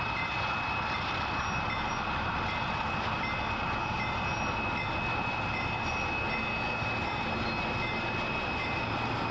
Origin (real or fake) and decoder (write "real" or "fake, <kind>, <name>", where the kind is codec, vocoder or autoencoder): real